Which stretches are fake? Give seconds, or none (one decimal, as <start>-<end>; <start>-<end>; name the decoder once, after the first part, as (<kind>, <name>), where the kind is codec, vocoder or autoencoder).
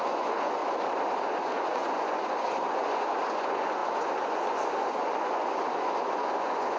0.0-0.6 (vocoder, Vocos); 1.4-6.8